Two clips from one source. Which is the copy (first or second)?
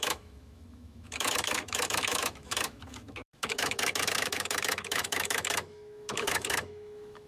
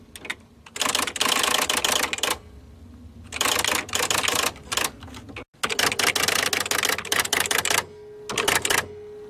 first